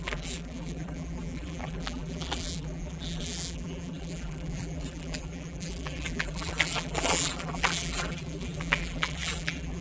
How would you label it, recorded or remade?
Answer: remade